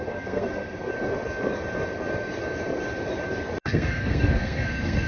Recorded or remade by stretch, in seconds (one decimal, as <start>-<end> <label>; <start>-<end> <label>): 0.0-0.9 remade; 0.9-3.6 recorded; 3.6-5.1 remade